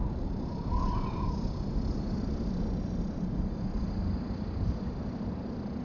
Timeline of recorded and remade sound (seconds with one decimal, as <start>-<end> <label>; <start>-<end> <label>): 0.0-0.5 recorded; 0.5-3.5 remade; 3.5-5.8 recorded